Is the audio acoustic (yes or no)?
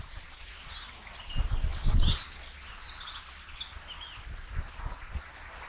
yes